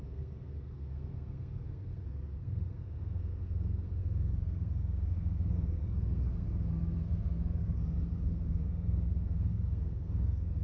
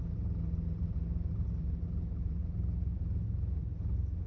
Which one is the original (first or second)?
second